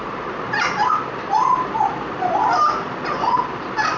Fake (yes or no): no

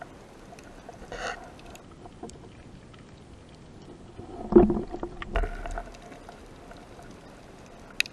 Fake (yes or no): no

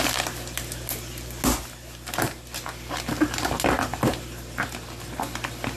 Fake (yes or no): no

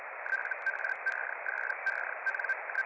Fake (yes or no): no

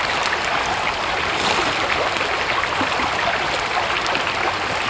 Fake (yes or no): no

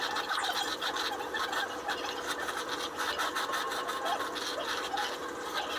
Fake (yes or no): no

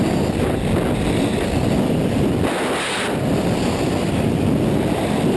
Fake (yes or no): no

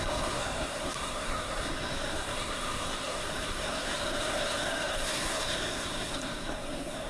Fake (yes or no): yes